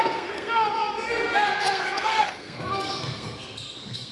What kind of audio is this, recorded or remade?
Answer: remade